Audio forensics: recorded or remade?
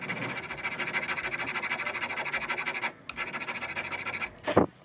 recorded